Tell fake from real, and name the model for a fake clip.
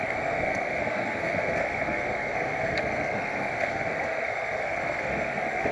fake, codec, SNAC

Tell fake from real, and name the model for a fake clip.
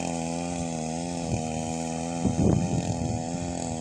real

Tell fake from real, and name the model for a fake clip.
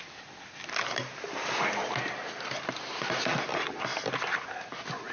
real